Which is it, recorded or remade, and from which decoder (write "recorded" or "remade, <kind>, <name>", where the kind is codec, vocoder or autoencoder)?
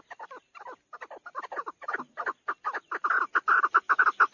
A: recorded